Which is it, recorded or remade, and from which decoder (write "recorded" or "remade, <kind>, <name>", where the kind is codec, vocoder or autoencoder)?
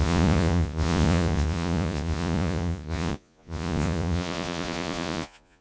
remade, vocoder, Vocos